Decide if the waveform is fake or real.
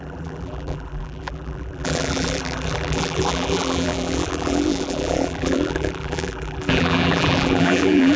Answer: fake